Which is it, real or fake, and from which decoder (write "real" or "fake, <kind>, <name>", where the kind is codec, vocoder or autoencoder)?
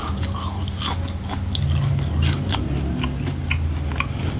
real